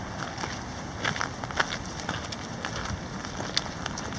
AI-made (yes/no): no